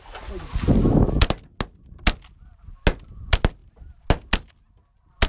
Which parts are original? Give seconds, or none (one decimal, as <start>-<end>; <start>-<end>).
0.0-5.3